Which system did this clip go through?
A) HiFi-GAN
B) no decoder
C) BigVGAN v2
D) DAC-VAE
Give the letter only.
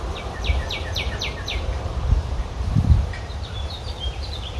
C